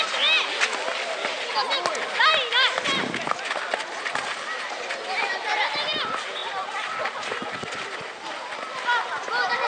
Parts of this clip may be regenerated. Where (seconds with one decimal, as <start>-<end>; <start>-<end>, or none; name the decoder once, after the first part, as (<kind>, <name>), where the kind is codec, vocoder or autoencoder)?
none